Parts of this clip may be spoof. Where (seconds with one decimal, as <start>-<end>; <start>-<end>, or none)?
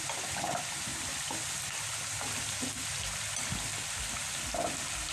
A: none